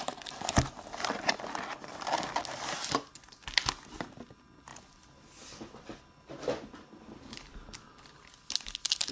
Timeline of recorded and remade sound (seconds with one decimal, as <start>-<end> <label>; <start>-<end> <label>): 0.0-9.1 recorded

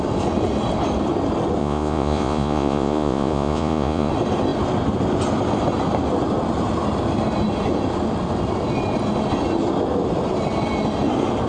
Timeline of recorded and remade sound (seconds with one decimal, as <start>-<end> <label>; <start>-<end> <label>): 0.0-1.6 recorded; 1.6-4.1 remade; 4.1-11.5 recorded

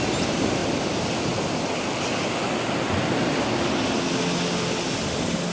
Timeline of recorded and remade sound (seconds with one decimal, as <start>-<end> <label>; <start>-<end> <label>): 0.0-5.5 recorded

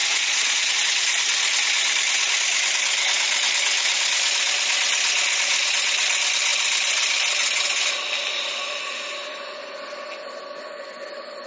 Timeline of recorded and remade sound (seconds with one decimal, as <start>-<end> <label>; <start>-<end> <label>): 0.0-0.7 remade; 0.7-11.5 recorded

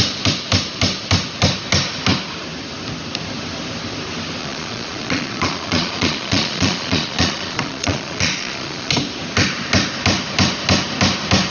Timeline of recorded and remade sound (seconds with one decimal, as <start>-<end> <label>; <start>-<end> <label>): 0.0-4.4 recorded; 4.4-8.9 remade; 8.9-11.5 recorded